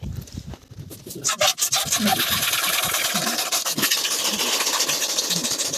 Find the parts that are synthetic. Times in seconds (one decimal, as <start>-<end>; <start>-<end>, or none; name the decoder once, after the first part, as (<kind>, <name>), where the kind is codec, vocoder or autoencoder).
none